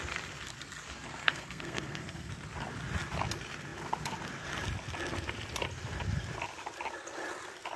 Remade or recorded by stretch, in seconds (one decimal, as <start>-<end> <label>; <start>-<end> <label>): 0.0-1.2 recorded; 1.2-2.3 remade; 2.3-7.8 recorded